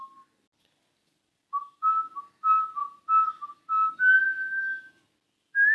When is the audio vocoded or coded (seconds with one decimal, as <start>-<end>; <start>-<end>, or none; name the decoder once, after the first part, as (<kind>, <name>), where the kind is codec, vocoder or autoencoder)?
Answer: none

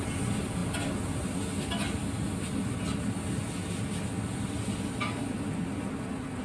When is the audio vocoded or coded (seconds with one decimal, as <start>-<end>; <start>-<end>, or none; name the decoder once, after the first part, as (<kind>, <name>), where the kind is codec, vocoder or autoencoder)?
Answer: none

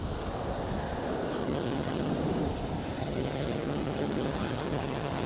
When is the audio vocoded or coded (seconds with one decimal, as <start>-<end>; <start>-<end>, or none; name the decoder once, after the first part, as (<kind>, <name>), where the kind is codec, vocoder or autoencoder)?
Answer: 1.4-2.1 (vocoder, HiFi-GAN); 3.0-5.3